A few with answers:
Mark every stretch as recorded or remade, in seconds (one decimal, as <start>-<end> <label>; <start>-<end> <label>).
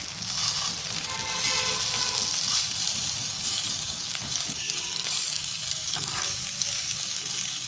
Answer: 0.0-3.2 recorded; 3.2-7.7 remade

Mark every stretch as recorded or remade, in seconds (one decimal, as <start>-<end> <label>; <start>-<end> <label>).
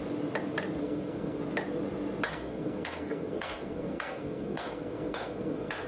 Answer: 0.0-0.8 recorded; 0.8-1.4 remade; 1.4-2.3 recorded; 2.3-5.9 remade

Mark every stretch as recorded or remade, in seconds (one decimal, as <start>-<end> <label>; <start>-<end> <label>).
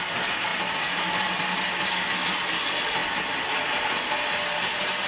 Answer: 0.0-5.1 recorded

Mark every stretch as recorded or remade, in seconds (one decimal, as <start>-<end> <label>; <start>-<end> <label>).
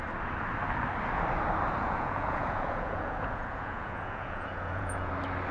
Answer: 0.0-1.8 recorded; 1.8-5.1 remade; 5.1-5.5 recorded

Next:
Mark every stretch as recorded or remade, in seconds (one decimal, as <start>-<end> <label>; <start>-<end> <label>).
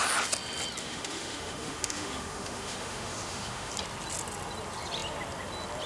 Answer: 0.0-0.8 recorded; 0.8-3.7 remade; 3.7-5.9 recorded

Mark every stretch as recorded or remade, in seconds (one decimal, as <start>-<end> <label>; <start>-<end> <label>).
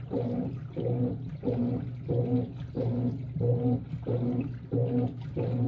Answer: 0.0-5.7 recorded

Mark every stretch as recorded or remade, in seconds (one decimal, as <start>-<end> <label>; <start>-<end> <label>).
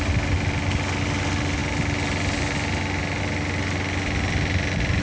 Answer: 0.0-5.0 recorded